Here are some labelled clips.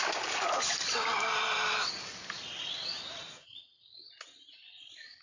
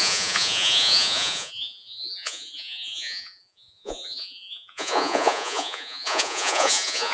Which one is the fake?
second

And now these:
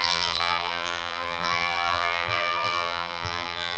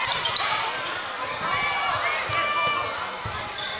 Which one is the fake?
first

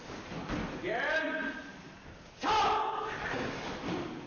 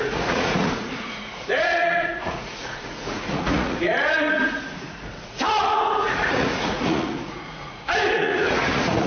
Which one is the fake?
second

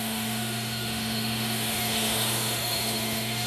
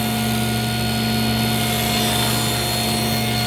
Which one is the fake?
first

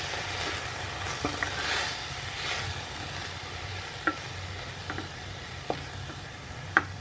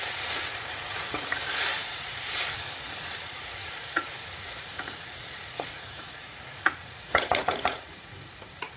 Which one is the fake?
second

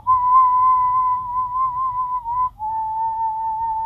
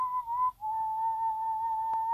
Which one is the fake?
first